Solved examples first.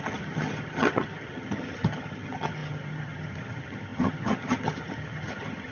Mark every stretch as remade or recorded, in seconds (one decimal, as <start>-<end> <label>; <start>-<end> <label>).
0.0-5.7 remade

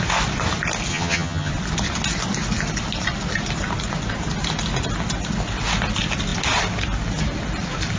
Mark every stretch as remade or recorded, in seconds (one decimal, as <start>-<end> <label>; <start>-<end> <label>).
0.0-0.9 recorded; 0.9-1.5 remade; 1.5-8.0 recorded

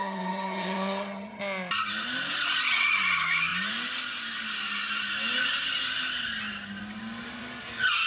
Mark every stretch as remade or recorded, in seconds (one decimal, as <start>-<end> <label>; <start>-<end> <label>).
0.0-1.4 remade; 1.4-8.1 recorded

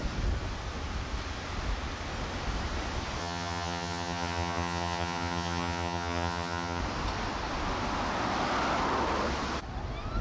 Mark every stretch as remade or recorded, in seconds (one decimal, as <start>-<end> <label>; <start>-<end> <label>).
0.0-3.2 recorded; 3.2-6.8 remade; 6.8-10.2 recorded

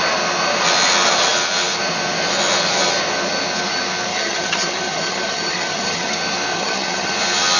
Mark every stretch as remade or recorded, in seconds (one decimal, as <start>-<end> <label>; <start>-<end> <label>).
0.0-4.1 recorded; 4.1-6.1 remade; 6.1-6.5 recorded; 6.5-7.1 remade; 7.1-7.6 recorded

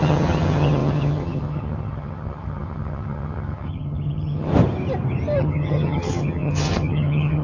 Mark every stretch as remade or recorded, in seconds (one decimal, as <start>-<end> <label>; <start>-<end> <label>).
0.0-4.5 remade; 4.5-5.4 recorded; 5.4-7.4 remade

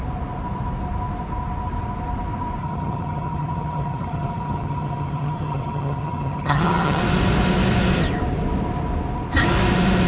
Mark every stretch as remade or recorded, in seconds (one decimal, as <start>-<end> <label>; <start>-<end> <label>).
0.0-2.6 recorded; 2.6-7.0 remade; 7.0-10.1 recorded

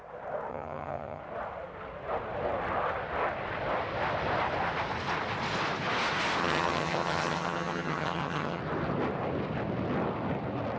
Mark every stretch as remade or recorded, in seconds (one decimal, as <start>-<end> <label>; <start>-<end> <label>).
0.0-0.5 recorded; 0.5-1.2 remade; 1.2-6.4 recorded; 6.4-8.6 remade; 8.6-10.8 recorded